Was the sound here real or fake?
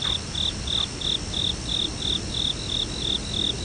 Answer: real